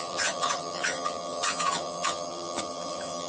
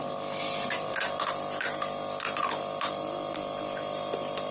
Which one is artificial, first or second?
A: first